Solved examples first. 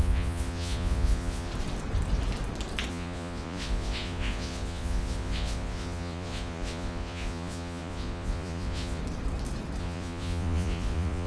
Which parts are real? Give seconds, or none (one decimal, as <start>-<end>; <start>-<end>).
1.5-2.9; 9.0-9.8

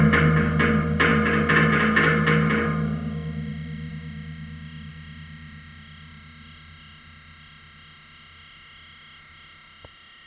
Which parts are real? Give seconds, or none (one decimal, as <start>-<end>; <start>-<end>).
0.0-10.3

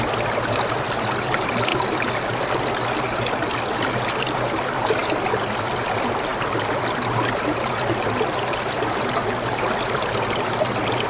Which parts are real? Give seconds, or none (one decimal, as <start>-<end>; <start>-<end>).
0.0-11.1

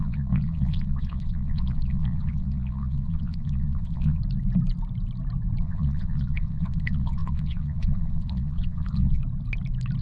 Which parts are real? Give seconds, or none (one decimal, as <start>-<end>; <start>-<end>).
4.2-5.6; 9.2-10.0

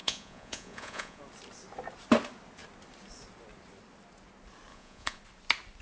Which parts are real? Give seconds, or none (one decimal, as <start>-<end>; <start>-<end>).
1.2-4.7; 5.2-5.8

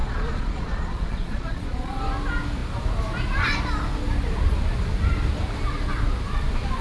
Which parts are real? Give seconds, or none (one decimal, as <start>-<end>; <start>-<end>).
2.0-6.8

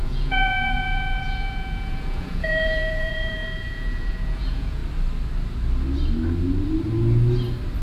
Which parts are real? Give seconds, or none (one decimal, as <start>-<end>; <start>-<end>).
4.8-7.8

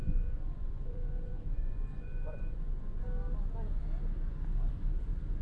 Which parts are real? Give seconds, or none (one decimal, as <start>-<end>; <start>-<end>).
3.0-5.4